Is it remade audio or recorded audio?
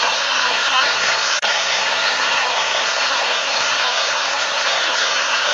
remade